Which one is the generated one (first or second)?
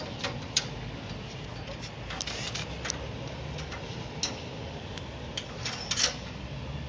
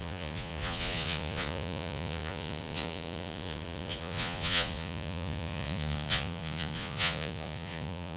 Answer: second